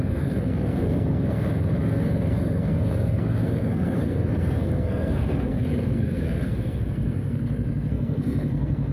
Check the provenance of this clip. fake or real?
fake